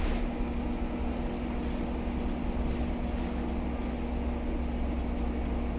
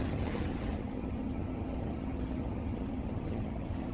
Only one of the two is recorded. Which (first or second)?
first